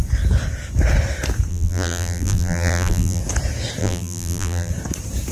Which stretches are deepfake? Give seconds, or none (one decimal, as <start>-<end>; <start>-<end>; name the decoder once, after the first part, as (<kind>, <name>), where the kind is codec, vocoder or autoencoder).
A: 1.5-3.2 (vocoder, BigVGAN v2); 3.8-4.7